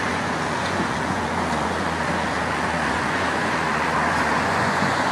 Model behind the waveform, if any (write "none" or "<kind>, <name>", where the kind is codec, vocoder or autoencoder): vocoder, Vocos